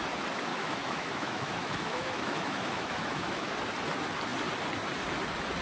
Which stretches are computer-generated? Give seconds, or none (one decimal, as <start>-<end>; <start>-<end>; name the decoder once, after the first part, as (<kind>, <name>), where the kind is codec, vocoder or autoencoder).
0.5-3.5 (autoencoder, DAC-VAE)